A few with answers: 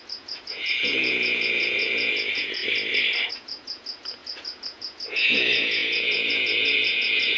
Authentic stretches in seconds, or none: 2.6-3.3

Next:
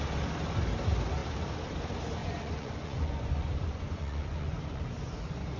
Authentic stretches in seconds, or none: 0.0-2.2

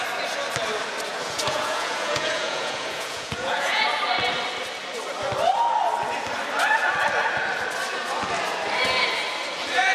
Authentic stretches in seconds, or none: 0.0-1.1; 4.0-9.9

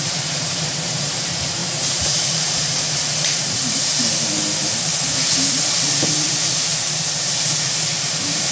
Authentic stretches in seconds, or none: 4.9-5.7

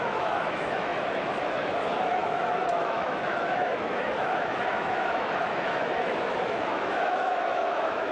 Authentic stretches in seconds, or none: none

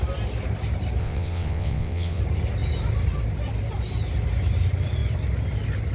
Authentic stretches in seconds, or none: 0.0-1.0; 2.2-5.9

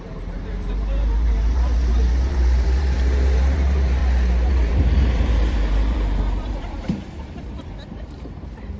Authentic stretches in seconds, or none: 4.0-4.5

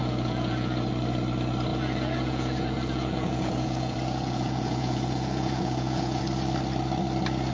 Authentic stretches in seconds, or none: 0.9-1.7; 6.2-7.5